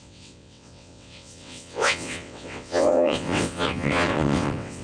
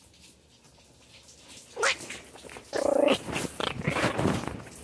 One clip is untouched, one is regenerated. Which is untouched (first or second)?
second